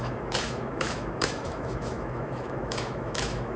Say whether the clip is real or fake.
fake